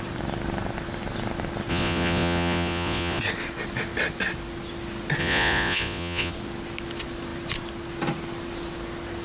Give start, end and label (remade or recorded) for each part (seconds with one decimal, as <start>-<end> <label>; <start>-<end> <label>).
0.0-1.7 recorded; 1.7-3.2 remade; 3.2-5.2 recorded; 5.2-6.3 remade; 6.3-9.2 recorded